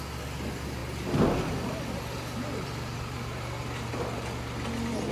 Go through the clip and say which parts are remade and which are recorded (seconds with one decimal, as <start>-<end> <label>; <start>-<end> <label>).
0.0-5.1 recorded